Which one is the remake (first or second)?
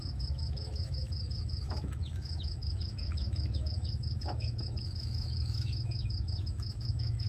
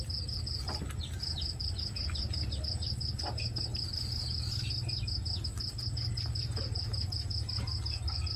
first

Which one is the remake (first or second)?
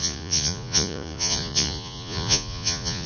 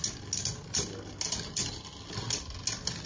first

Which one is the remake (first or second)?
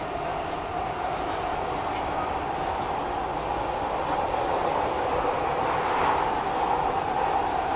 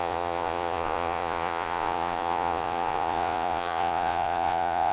second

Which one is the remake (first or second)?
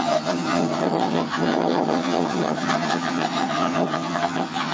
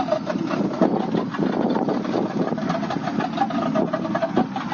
first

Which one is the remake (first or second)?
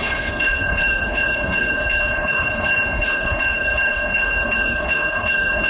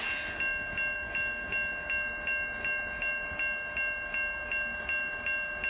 first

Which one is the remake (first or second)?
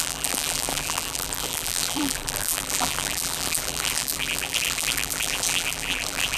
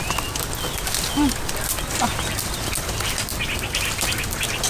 first